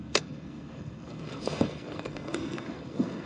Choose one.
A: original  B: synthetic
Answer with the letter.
B